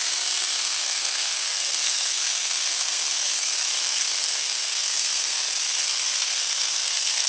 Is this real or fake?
fake